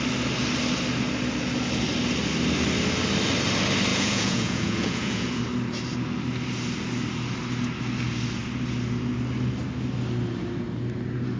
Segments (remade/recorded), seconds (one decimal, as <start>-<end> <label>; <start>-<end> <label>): 0.0-3.9 recorded; 3.9-5.4 remade; 5.4-11.4 recorded